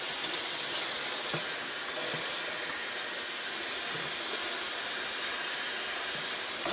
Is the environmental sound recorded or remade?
recorded